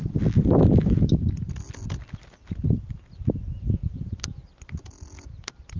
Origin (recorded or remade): recorded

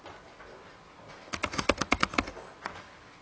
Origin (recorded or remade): recorded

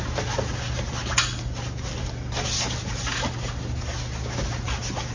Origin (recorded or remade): recorded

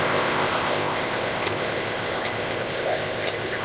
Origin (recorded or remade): remade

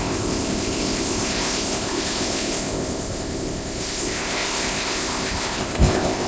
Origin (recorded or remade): remade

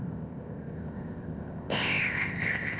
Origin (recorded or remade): remade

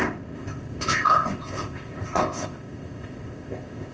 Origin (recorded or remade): remade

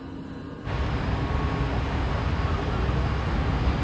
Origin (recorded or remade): recorded